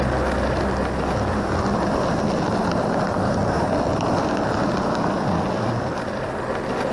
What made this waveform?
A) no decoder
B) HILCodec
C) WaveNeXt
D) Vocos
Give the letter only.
A